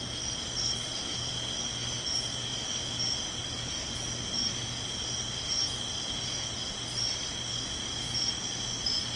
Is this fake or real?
real